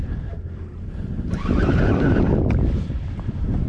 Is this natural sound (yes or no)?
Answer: no